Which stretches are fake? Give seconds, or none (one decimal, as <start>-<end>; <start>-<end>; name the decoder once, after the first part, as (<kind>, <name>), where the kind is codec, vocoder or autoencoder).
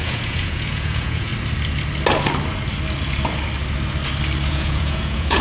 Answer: 0.0-1.3 (vocoder, Vocos); 4.5-5.4